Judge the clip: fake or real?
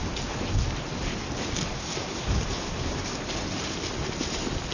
real